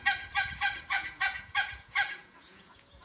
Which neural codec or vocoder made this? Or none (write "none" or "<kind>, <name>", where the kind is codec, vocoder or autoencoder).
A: vocoder, Vocos